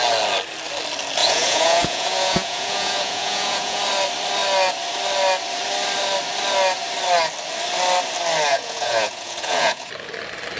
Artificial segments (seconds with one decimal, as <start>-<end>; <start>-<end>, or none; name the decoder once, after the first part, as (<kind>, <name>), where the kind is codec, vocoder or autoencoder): 1.2-3.8 (vocoder, Vocos); 8.5-9.9